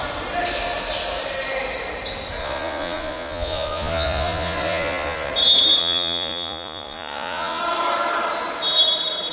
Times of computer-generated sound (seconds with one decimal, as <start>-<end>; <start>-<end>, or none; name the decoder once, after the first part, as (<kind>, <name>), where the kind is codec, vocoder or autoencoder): 2.4-5.3 (vocoder, Vocos); 5.8-7.6